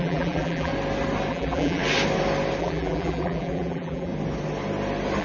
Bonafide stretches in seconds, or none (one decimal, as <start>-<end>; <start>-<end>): 0.7-1.3; 1.8-2.6; 4.1-5.2